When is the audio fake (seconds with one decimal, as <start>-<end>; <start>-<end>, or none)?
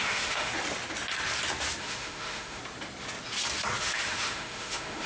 0.0-0.5; 1.8-2.6; 3.8-5.1